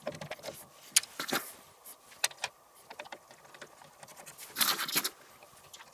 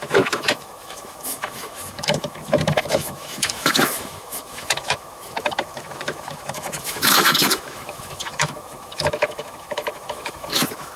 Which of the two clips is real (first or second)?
first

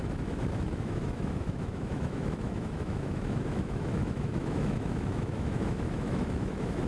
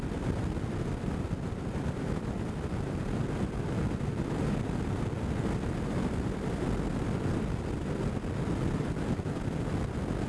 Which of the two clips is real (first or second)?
second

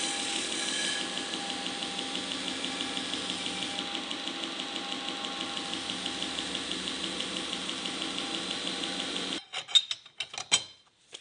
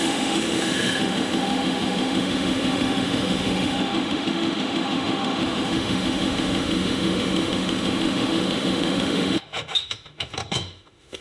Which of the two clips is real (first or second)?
first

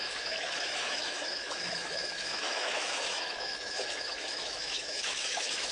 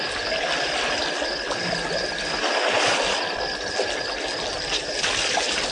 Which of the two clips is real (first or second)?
second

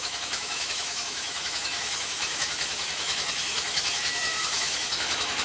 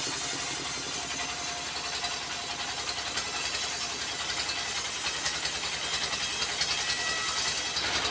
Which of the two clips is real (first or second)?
second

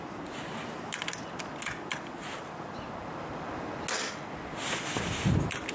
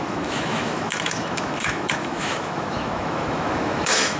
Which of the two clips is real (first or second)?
first